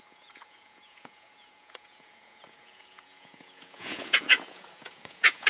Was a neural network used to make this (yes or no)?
yes